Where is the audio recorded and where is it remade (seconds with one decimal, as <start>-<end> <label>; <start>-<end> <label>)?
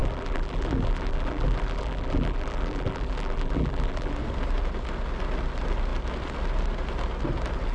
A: 0.0-4.1 remade; 4.1-7.7 recorded